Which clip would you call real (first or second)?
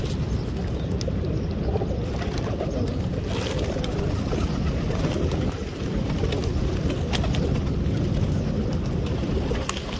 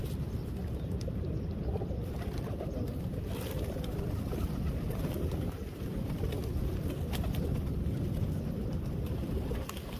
first